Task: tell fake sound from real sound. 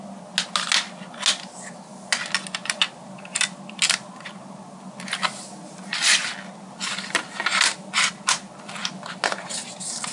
real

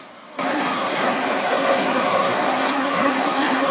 fake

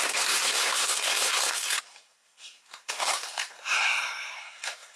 fake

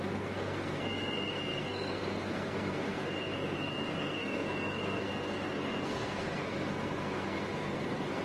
fake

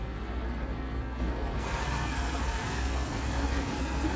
fake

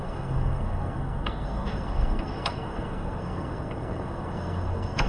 fake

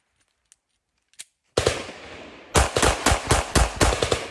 real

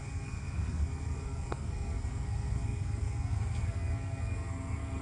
fake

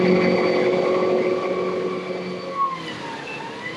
real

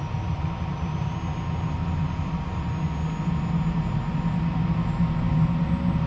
real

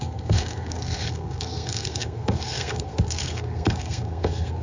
fake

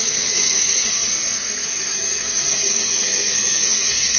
fake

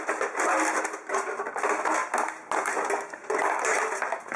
real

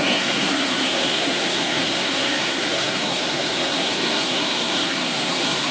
fake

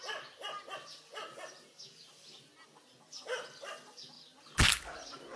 real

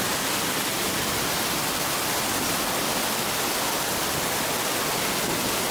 real